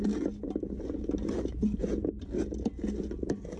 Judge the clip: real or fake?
real